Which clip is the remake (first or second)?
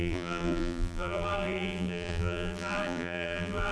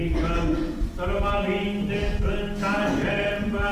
first